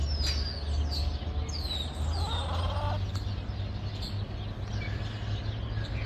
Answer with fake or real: real